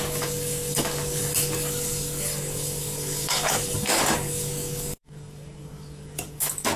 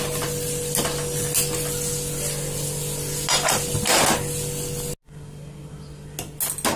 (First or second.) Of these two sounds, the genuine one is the second